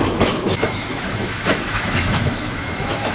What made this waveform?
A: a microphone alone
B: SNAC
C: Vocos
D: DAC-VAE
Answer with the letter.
D